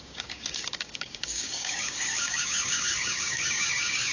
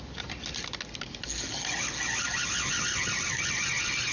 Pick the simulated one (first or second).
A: first